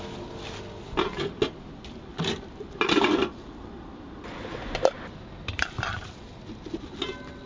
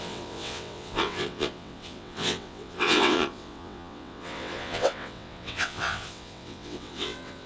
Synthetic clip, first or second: second